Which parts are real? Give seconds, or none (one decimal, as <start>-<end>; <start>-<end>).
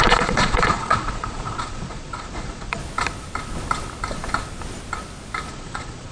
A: 2.8-5.5